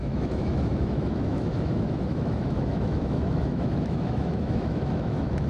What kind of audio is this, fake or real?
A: fake